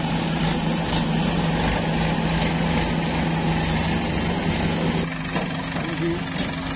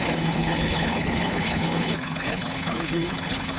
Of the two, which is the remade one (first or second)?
second